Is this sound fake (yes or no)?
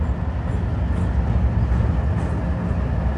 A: no